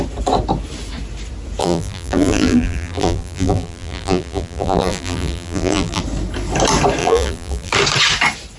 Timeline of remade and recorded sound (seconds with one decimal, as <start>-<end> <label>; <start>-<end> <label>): 0.0-1.6 recorded; 1.6-6.0 remade; 6.0-7.0 recorded; 7.0-7.7 remade; 7.7-8.6 recorded